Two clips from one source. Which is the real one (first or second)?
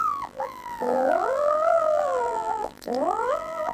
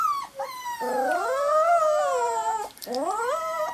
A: second